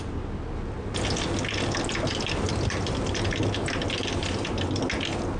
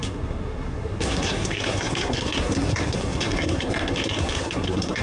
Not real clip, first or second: second